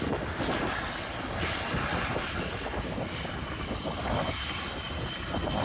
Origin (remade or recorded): recorded